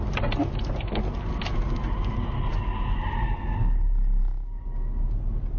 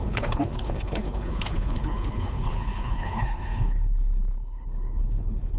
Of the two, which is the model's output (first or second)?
second